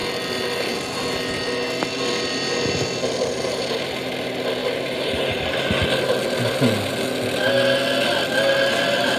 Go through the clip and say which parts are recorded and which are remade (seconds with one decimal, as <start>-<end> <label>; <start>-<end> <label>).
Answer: 0.0-4.6 recorded; 4.6-5.6 remade; 5.6-9.2 recorded